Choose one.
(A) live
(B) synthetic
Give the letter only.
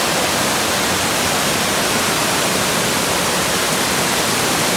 A